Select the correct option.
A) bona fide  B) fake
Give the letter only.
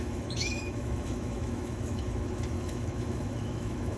B